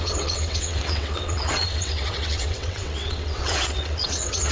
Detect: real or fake fake